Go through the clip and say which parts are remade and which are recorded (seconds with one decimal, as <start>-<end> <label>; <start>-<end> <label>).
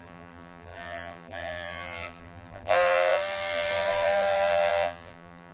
0.0-5.5 remade